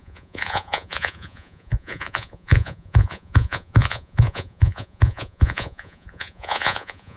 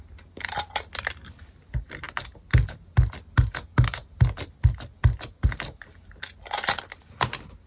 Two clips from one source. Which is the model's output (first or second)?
first